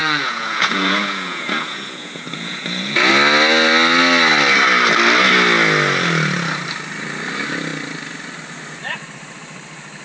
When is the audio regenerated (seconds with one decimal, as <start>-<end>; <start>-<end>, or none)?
0.0-3.1